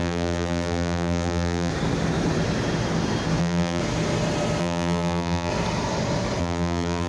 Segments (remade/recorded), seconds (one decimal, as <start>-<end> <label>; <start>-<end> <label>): 0.0-1.7 remade; 1.7-3.4 recorded; 3.4-3.8 remade; 3.8-4.6 recorded; 4.6-5.5 remade; 5.5-6.4 recorded; 6.4-7.1 remade